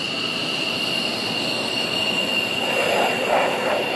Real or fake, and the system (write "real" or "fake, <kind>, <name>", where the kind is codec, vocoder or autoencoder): real